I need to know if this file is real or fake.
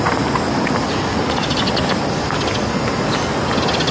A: real